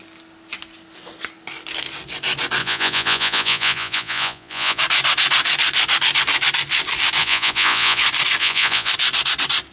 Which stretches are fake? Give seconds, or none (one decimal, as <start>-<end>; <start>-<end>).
2.6-4.8; 7.2-8.0; 8.4-8.9

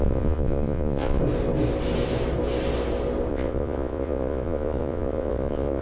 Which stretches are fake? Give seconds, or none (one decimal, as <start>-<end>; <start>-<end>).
0.0-1.2; 3.3-5.8